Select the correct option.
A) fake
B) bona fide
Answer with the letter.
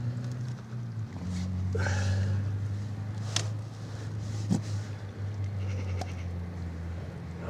B